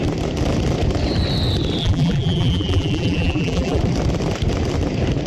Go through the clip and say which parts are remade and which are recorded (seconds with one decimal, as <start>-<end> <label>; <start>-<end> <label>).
0.0-1.8 recorded; 1.8-3.8 remade; 3.8-5.3 recorded